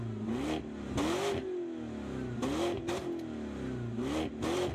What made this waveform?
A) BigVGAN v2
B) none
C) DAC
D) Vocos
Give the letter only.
B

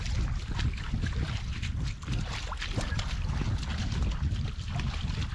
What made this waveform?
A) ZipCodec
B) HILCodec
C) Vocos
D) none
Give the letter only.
D